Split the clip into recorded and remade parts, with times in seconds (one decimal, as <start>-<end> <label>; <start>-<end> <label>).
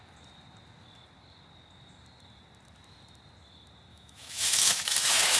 0.0-3.9 recorded; 3.9-5.4 remade